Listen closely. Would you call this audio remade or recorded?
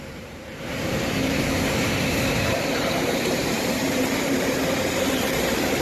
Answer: remade